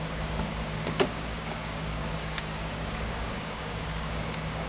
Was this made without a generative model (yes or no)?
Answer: no